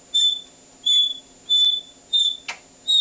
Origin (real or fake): real